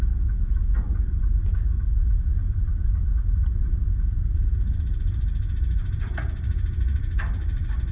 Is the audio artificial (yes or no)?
yes